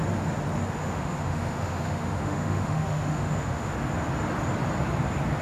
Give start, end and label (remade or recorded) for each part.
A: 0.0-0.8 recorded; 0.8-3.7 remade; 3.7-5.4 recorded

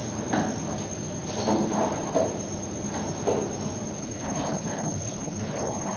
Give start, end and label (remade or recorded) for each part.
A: 0.0-4.0 recorded; 4.0-6.0 remade

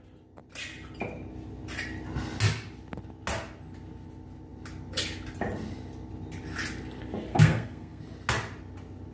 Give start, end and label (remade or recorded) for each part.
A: 0.0-7.3 recorded; 7.3-8.0 remade; 8.0-9.1 recorded